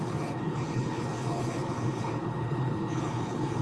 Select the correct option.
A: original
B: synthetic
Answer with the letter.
B